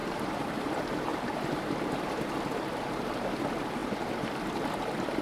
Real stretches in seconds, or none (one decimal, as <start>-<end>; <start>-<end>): 0.7-1.1; 2.1-5.2